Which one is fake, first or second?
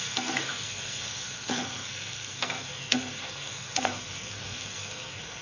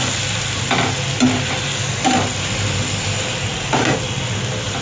first